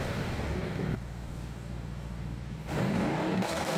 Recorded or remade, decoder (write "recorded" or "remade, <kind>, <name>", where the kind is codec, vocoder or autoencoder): remade, codec, DAC